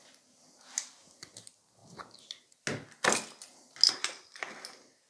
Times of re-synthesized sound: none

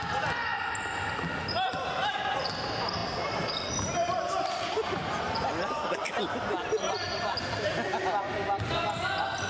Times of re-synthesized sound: none